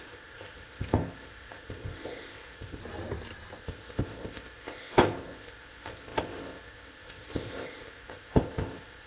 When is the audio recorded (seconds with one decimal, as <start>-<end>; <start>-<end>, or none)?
2.8-3.6